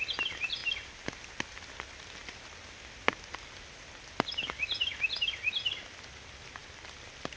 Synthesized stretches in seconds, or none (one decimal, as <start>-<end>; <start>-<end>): none